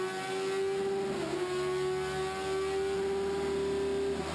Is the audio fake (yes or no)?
no